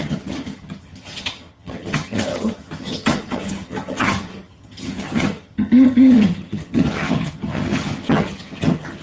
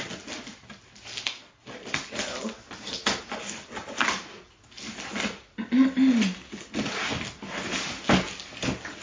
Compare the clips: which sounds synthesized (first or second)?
first